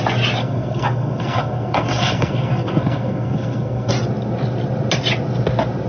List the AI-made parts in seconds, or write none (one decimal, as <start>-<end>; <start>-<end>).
0.4-3.9